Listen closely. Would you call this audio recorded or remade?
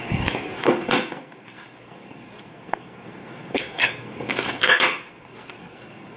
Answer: remade